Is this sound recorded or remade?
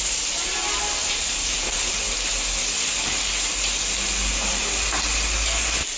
recorded